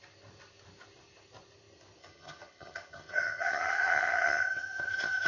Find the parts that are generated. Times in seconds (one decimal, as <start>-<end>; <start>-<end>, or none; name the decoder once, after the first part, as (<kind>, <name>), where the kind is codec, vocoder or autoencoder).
2.0-5.3 (vocoder, HiFi-GAN)